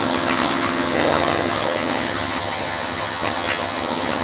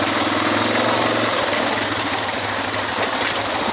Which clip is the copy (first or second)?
first